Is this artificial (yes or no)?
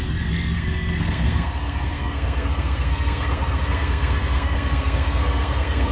yes